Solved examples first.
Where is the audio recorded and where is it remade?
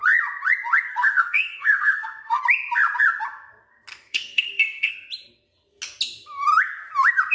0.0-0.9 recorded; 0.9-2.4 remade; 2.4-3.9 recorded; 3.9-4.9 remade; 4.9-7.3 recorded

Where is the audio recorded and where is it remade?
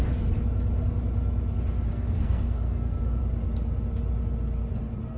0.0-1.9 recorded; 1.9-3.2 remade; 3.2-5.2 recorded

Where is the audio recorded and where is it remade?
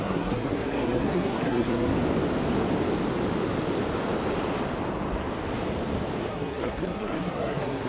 0.0-1.9 remade; 1.9-6.3 recorded; 6.3-7.9 remade